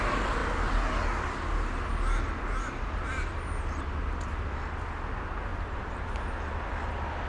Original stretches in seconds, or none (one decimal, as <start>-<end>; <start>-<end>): 0.0-5.5; 6.2-7.3